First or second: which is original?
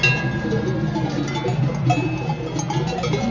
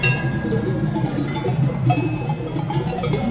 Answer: first